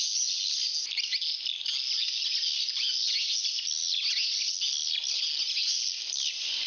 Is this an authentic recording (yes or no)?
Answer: yes